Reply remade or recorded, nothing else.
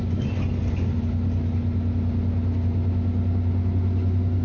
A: recorded